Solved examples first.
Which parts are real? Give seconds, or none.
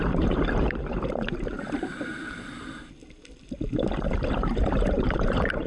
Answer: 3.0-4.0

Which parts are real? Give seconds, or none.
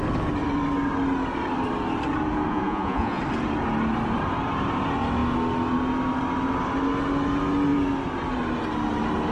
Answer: 0.0-2.5; 3.2-9.3